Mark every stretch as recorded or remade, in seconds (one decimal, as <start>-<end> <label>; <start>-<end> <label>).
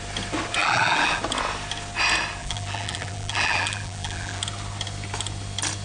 0.0-0.6 recorded; 0.6-1.2 remade; 1.2-2.4 recorded; 2.4-4.4 remade; 4.4-5.8 recorded